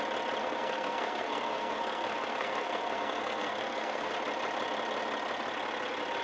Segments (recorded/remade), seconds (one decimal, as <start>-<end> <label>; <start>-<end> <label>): 0.0-0.4 recorded; 0.4-4.1 remade; 4.1-6.2 recorded